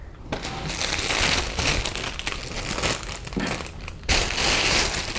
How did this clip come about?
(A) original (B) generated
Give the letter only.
A